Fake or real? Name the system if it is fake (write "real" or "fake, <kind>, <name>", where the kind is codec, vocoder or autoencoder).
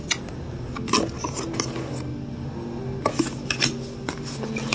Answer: real